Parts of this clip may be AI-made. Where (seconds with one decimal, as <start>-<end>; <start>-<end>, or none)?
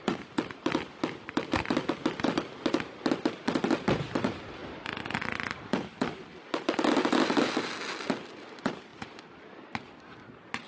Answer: 4.6-5.6; 8.9-10.1